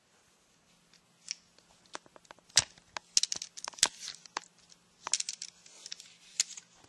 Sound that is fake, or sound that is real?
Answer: real